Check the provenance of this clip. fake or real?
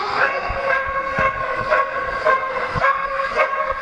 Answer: fake